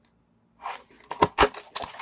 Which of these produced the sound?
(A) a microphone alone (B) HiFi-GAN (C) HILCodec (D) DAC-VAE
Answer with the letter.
A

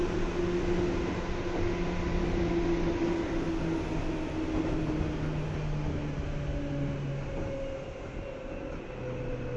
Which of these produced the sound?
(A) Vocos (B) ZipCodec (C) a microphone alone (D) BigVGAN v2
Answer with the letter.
C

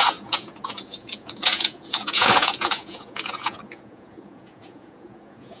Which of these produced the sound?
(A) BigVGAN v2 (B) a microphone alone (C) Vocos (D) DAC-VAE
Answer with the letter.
C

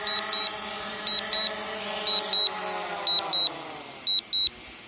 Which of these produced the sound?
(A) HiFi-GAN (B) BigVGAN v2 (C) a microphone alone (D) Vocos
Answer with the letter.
C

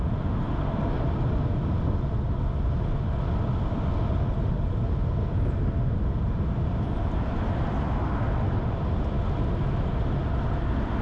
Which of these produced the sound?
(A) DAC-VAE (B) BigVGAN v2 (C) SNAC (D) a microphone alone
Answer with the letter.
D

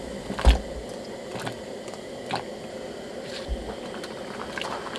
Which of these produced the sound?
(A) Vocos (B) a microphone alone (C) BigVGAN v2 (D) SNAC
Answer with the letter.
B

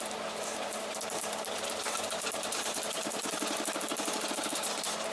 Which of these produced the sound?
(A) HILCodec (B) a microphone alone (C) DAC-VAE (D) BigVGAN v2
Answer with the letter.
D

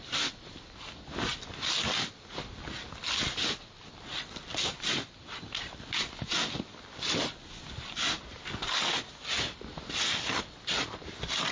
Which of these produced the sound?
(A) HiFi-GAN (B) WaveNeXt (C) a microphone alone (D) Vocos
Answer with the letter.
C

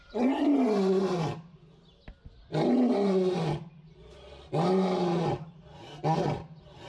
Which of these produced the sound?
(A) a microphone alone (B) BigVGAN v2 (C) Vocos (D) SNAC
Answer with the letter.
A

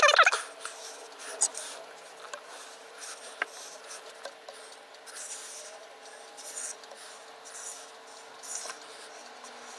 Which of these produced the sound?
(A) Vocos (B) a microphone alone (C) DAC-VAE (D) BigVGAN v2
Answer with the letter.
B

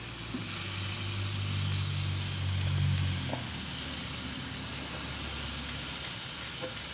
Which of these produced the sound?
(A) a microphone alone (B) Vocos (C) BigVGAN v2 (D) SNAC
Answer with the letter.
A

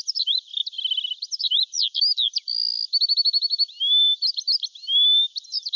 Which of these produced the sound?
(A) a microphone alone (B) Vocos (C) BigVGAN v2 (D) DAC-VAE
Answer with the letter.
A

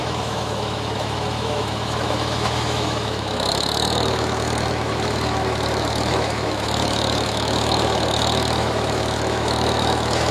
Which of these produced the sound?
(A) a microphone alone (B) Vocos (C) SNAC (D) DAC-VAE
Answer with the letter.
D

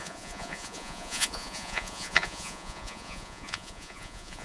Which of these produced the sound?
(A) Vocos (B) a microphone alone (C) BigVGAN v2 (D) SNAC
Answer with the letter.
A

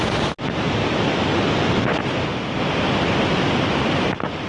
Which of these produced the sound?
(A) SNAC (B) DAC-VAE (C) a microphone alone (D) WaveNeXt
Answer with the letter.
C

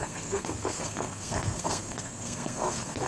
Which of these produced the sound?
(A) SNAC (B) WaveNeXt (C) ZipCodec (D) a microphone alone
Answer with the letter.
A